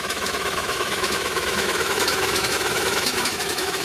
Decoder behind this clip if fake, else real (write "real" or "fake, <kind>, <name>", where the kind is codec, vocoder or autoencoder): fake, autoencoder, DAC-VAE